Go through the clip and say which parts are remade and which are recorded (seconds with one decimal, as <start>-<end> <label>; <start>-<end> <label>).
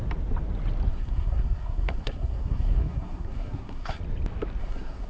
0.0-0.9 recorded; 0.9-4.0 remade; 4.0-4.6 recorded; 4.6-5.1 remade